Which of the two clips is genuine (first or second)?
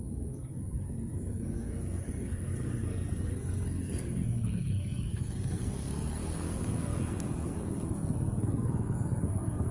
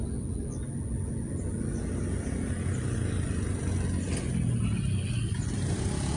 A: second